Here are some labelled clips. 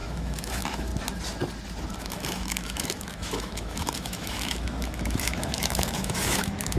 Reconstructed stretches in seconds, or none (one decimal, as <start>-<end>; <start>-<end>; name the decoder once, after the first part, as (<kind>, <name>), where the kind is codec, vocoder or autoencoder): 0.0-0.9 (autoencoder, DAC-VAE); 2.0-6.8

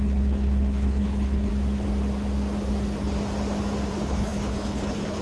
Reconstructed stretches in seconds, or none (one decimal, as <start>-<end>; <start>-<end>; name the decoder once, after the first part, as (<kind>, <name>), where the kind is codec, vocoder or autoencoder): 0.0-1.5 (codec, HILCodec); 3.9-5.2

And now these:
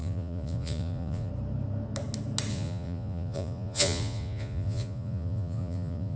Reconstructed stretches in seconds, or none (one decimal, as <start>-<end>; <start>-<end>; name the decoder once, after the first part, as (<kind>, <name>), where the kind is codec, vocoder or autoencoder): 0.0-1.3 (vocoder, Vocos); 2.5-6.2

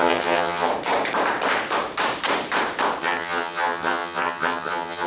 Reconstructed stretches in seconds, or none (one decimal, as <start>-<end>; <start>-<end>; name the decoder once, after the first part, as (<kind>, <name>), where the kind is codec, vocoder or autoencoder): 0.0-0.7 (vocoder, HiFi-GAN); 3.0-5.1